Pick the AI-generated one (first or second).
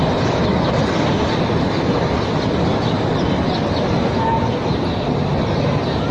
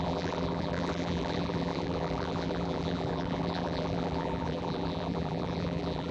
second